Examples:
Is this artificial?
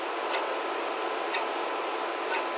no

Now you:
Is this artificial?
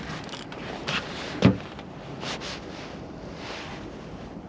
no